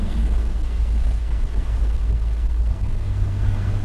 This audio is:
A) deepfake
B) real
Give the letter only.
A